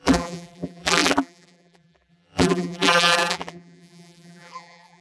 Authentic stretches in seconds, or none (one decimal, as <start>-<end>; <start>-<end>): none